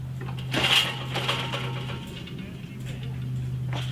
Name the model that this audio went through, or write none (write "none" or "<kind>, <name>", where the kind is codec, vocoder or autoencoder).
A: none